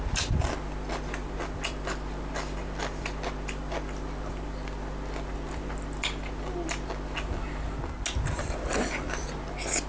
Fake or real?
real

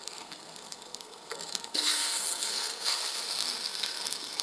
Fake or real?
fake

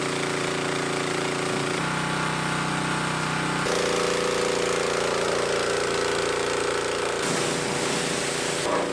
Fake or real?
real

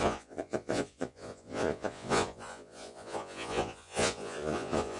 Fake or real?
fake